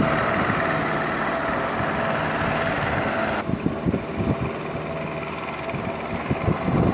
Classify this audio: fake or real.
real